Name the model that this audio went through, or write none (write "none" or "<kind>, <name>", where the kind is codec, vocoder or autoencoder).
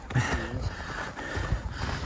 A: none